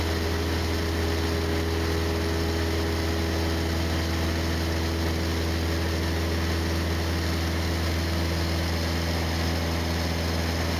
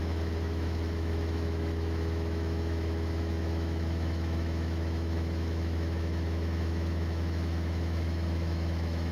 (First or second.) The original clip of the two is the first